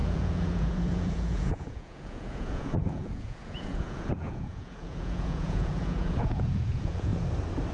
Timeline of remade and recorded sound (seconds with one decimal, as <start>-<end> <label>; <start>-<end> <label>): 0.0-7.1 remade; 7.1-7.7 recorded